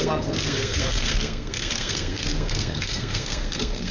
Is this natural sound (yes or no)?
no